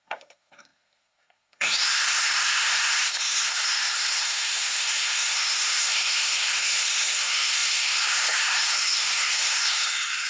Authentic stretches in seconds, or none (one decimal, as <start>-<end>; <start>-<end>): none